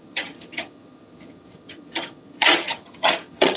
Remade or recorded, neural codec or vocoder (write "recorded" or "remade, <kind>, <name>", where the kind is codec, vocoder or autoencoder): remade, vocoder, HiFi-GAN